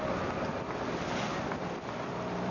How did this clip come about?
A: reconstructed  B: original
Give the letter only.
B